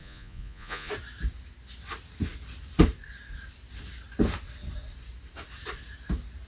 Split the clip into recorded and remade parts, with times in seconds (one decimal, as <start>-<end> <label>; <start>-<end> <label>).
0.0-0.9 remade; 0.9-6.5 recorded

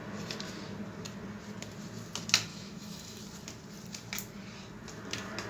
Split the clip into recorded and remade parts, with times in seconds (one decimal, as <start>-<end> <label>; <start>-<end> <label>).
0.0-2.5 recorded; 2.5-3.2 remade; 3.2-5.5 recorded

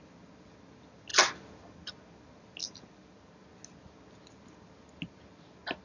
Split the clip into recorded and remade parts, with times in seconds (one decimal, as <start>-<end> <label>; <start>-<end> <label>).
0.0-5.8 recorded